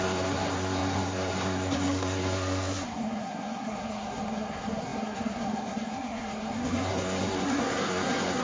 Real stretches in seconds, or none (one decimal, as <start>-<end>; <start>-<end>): none